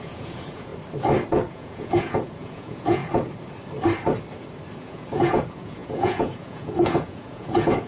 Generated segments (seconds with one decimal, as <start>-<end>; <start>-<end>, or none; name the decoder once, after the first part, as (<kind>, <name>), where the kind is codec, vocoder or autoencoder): 0.0-0.7 (vocoder, Vocos); 1.5-3.0; 4.8-7.9